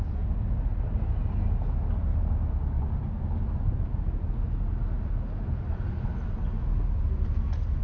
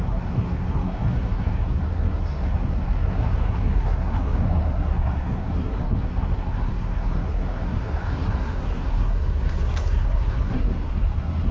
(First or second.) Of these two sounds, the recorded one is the first